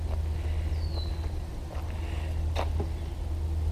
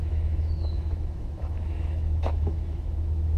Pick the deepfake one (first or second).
second